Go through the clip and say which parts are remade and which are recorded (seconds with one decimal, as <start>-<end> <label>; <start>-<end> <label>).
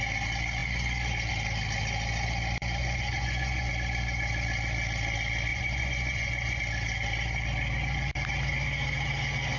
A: 0.0-2.8 recorded; 2.8-3.7 remade; 3.7-5.5 recorded; 5.5-6.6 remade; 6.6-9.6 recorded